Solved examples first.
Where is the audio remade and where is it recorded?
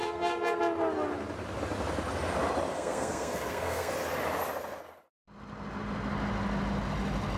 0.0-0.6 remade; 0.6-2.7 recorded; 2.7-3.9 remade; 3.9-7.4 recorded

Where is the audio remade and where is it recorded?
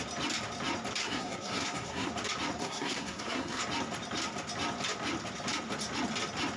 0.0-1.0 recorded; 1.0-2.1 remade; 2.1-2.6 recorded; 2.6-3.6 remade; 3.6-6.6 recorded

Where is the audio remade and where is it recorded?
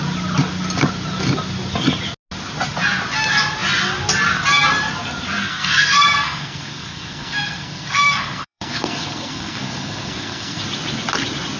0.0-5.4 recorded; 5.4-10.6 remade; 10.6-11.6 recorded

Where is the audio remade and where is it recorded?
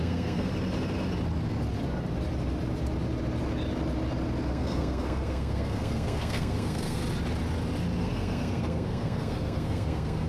0.0-0.5 remade; 0.5-4.5 recorded; 4.5-7.0 remade; 7.0-8.0 recorded; 8.0-10.3 remade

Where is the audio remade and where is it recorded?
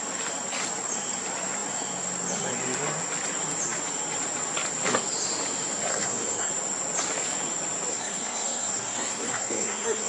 0.0-5.9 recorded; 5.9-6.5 remade; 6.5-7.9 recorded; 7.9-10.1 remade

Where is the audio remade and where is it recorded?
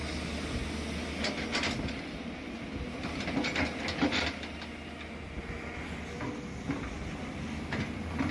0.0-8.3 recorded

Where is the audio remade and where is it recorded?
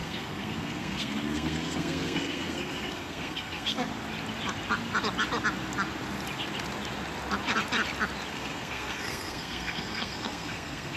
0.0-3.9 remade; 3.9-8.3 recorded; 8.3-11.0 remade